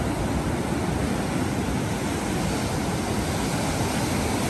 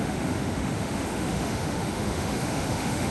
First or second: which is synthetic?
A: second